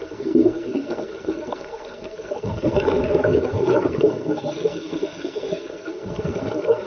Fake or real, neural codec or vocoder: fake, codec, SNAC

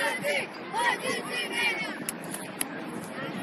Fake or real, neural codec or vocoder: real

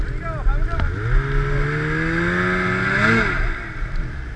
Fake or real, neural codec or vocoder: real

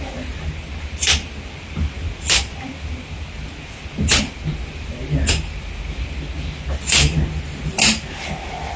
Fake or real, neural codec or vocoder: real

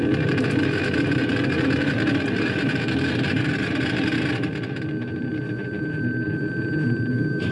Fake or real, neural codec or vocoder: fake, vocoder, BigVGAN v2